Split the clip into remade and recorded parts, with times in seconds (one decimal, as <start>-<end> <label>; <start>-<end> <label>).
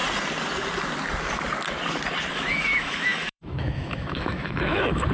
0.0-2.3 recorded; 2.3-5.1 remade